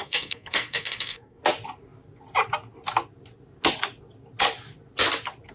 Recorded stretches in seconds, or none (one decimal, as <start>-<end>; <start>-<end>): 1.4-5.5

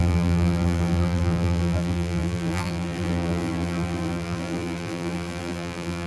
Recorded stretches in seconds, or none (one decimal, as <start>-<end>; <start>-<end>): none

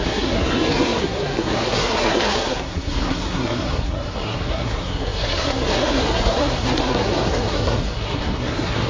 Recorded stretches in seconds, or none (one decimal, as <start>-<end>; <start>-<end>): none

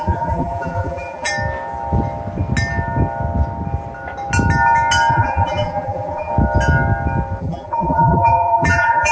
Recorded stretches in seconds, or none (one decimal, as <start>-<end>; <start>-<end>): 1.3-5.1; 6.3-7.4